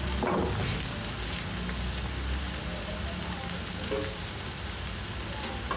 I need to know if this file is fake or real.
real